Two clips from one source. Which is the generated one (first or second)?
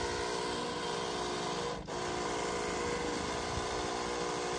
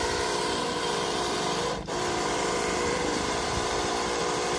second